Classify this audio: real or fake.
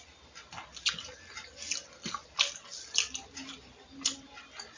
real